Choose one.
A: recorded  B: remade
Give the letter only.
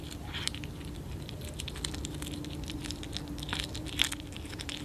A